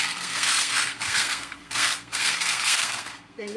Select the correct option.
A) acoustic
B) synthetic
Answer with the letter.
B